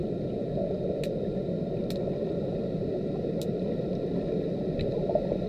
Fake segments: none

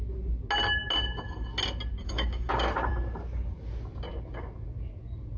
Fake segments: 2.0-2.5 (codec, DAC)